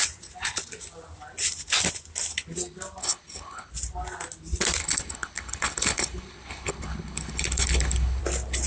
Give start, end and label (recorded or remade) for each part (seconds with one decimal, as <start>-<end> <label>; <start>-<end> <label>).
0.0-3.0 recorded; 3.0-3.7 remade; 3.7-4.8 recorded; 4.8-8.2 remade; 8.2-8.7 recorded